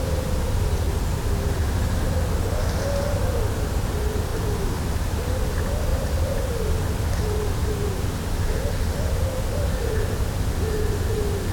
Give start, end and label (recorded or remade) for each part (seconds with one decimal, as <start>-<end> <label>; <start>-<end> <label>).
0.0-11.5 recorded